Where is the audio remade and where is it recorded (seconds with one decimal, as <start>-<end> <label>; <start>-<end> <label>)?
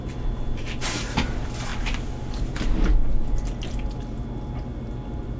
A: 0.0-5.4 recorded